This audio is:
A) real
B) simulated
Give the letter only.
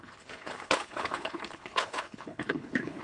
B